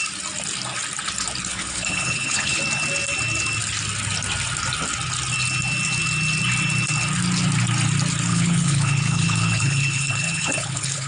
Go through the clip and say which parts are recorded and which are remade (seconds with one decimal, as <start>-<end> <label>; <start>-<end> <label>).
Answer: 0.0-1.5 recorded; 1.5-2.6 remade; 2.6-8.3 recorded; 8.3-11.1 remade